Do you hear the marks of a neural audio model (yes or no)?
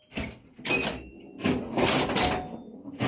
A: no